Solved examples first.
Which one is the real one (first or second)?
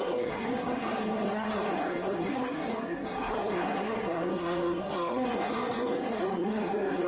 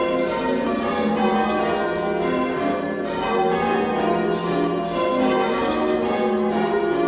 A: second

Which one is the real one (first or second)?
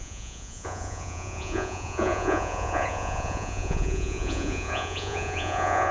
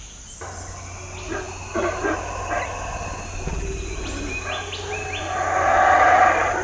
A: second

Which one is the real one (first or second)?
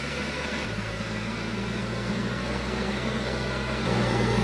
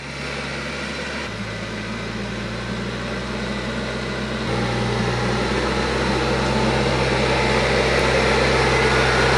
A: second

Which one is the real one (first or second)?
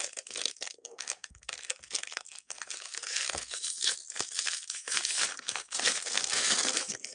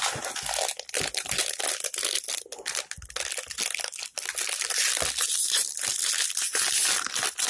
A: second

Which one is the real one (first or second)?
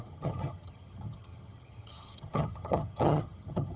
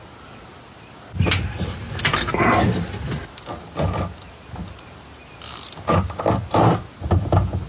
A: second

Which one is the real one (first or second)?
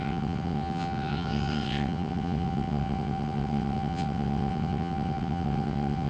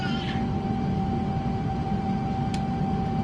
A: second